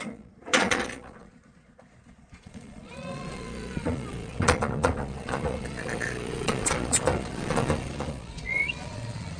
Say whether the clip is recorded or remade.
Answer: remade